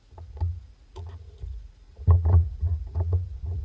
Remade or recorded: remade